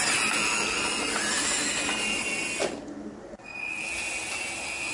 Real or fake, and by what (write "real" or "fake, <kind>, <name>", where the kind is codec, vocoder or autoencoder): real